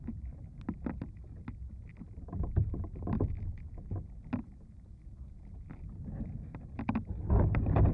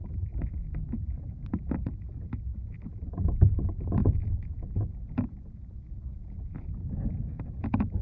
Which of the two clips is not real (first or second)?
second